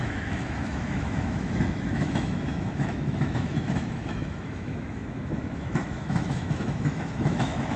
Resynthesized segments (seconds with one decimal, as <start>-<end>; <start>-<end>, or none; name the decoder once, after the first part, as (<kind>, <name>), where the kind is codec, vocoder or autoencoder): 0.0-7.8 (autoencoder, DAC-VAE)